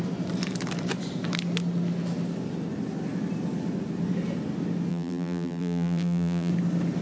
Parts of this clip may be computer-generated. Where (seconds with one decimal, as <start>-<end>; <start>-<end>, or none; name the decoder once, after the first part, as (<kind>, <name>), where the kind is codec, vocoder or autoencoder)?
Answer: 4.9-6.5 (vocoder, BigVGAN v2)